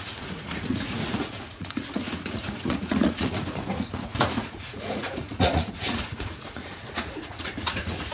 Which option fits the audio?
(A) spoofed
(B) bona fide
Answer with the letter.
A